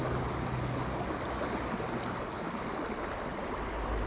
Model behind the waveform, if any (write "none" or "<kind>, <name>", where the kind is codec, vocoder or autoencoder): none